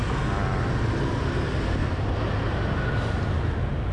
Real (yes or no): yes